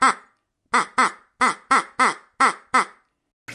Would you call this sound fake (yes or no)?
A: no